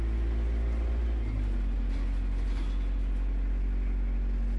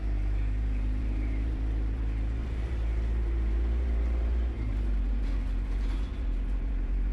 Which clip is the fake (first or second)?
second